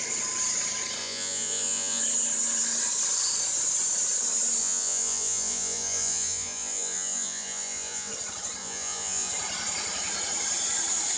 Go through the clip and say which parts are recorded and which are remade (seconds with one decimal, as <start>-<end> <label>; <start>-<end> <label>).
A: 0.0-1.0 recorded; 1.0-2.0 remade; 2.0-4.6 recorded; 4.6-8.1 remade; 8.1-8.6 recorded; 8.6-9.3 remade; 9.3-11.2 recorded